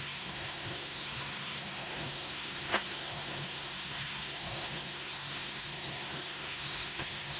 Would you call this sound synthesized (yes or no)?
yes